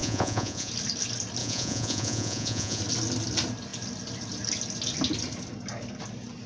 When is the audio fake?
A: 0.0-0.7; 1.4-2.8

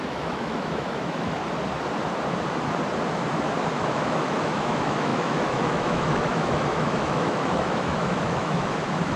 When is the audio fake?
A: 0.0-1.4; 3.7-9.2